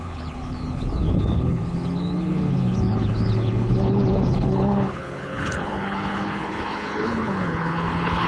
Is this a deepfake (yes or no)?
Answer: yes